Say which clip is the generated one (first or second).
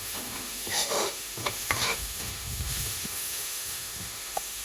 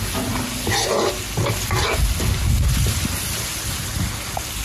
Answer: first